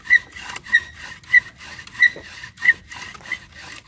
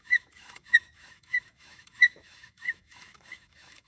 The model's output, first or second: second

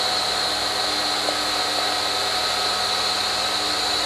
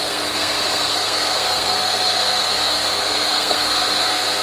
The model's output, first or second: second